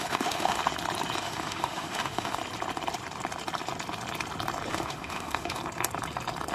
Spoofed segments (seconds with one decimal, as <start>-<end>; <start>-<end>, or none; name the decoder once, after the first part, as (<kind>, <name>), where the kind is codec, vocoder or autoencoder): 0.0-0.6 (autoencoder, DAC-VAE); 1.2-2.4; 4.7-5.6

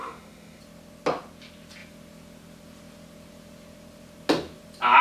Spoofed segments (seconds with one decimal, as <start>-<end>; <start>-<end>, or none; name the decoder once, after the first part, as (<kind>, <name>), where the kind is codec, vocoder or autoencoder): 0.0-0.6 (autoencoder, DAC-VAE)

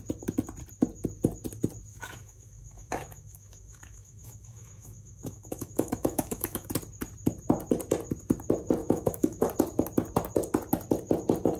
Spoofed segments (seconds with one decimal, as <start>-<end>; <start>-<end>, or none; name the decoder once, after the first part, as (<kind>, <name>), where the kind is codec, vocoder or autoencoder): 1.9-6.7 (autoencoder, DAC-VAE); 8.8-9.5

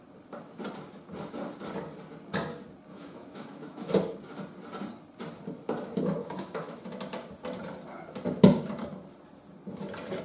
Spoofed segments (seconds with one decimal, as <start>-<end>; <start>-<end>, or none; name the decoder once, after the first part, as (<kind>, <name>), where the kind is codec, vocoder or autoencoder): 2.9-3.9 (autoencoder, DAC-VAE); 6.2-6.8

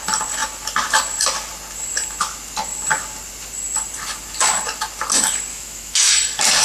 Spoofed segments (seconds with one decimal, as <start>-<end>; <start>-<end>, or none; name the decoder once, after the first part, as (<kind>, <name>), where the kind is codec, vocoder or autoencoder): 5.5-6.1 (autoencoder, DAC-VAE)

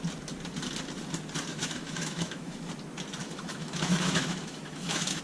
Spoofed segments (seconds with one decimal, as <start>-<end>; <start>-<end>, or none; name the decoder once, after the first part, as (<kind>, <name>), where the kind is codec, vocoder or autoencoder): 1.5-2.7 (autoencoder, DAC-VAE); 3.2-5.2

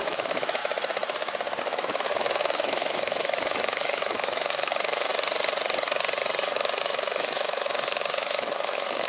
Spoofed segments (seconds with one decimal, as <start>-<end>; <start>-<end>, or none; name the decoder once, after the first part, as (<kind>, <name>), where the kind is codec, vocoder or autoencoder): 0.0-0.6 (autoencoder, DAC-VAE); 1.6-5.1; 6.8-9.1

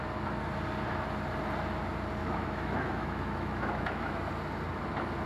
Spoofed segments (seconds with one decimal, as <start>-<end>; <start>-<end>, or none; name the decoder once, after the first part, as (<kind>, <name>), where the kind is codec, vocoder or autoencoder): 2.2-4.3 (autoencoder, DAC-VAE)